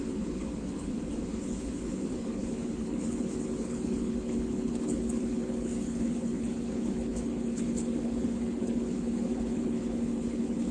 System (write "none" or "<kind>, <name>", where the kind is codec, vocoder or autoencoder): codec, HILCodec